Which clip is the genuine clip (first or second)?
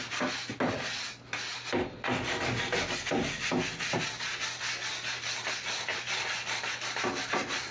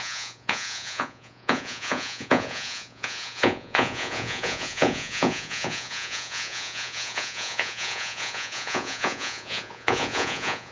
first